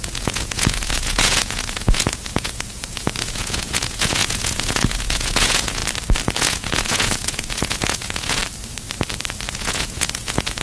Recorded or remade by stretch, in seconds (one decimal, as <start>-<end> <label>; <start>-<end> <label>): 0.0-5.8 remade; 5.8-6.4 recorded; 6.4-8.4 remade; 8.4-9.5 recorded; 9.5-10.6 remade